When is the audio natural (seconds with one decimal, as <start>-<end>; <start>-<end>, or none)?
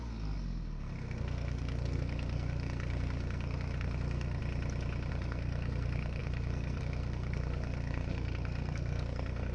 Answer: 4.4-5.1